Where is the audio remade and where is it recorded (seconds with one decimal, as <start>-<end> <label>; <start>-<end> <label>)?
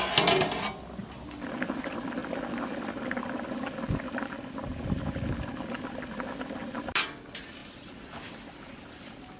0.0-9.4 recorded